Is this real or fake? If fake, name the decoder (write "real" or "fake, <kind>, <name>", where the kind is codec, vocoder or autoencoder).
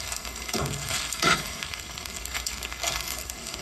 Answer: fake, codec, SNAC